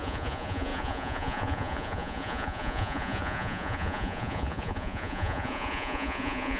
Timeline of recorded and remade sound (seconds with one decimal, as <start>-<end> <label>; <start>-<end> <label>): 0.0-6.6 remade